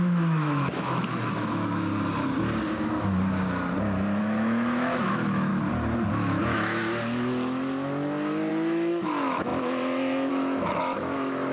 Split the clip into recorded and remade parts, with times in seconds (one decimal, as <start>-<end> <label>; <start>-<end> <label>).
0.0-1.9 remade; 1.9-4.2 recorded; 4.2-5.5 remade; 5.5-6.1 recorded; 6.1-6.8 remade; 6.8-8.5 recorded; 8.5-11.5 remade